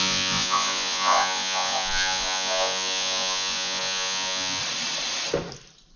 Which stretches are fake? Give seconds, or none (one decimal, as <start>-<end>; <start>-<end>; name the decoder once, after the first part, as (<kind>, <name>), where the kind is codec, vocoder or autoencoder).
0.0-4.6 (vocoder, Vocos)